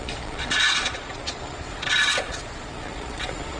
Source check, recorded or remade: remade